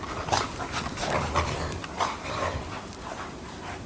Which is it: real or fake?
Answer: fake